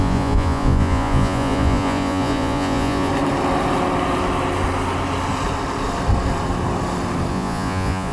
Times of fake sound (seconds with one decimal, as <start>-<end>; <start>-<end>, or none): 0.0-3.1; 7.3-8.1